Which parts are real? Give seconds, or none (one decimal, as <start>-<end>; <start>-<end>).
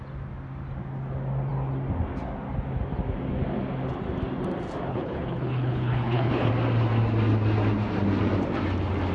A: 0.0-4.9; 6.5-9.1